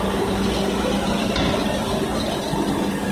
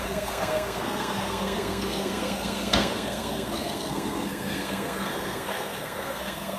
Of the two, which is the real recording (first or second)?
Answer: first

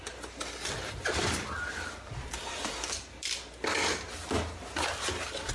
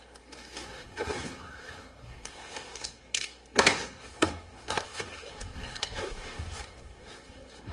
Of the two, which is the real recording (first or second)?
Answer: first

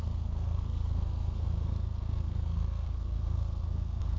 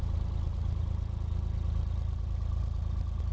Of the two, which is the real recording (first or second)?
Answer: second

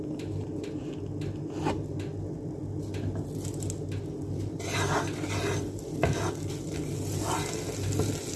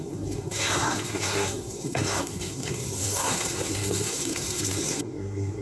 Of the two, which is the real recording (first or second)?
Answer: first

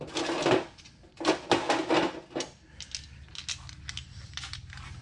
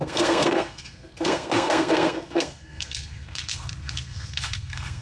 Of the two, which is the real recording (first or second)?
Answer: first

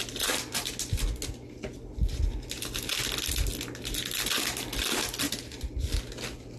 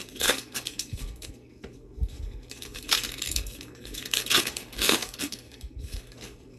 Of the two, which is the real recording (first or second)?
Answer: first